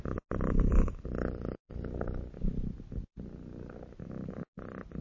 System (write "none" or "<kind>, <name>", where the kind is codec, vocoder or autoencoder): none